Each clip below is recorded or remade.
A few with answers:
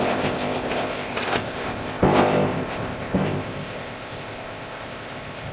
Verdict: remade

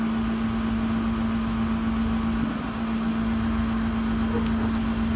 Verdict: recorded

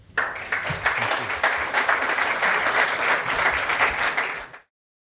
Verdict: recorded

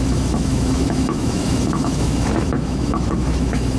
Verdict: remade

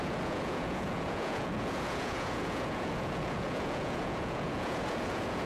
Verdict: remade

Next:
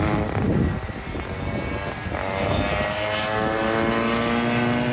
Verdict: recorded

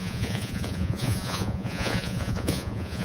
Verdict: remade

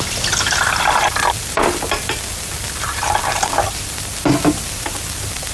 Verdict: remade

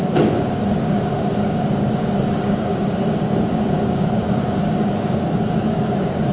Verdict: remade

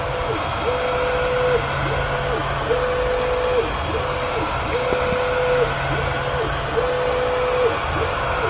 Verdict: recorded